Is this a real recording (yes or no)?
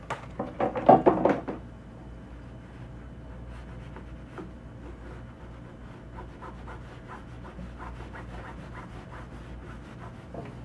yes